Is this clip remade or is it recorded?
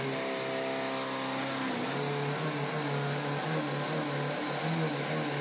recorded